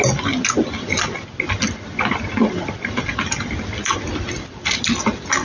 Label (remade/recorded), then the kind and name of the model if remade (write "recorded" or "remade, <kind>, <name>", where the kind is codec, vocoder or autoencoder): recorded